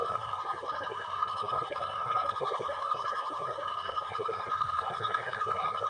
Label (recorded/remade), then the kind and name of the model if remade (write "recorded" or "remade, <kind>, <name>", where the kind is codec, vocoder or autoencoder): remade, codec, SNAC